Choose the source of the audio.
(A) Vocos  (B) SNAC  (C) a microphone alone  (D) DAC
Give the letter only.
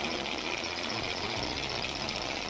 A